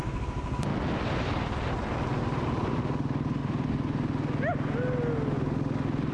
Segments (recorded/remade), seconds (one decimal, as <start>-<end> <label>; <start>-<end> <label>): 0.0-0.7 recorded; 0.7-2.8 remade; 2.8-6.1 recorded